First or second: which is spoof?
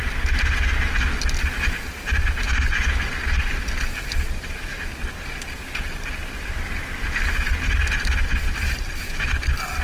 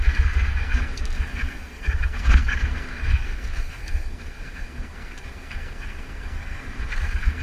second